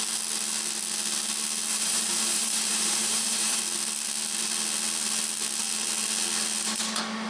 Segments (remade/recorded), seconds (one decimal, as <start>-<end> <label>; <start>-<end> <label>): 0.0-1.7 recorded; 1.7-3.6 remade; 3.6-7.3 recorded